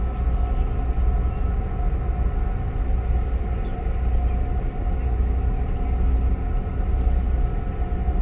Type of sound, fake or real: real